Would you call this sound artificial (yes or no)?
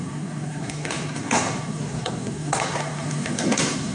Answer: yes